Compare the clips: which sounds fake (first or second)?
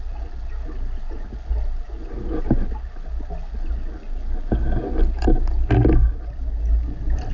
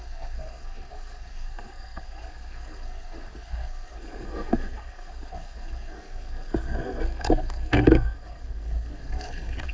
second